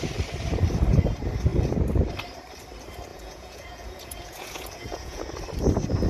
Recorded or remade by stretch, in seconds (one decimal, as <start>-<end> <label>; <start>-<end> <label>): 0.0-3.1 recorded; 3.1-5.2 remade; 5.2-6.1 recorded